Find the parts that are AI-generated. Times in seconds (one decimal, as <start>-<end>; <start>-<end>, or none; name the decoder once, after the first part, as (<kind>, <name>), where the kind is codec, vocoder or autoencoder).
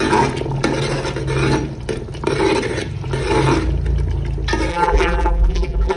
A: 4.7-6.0 (vocoder, BigVGAN v2)